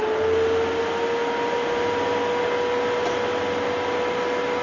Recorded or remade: recorded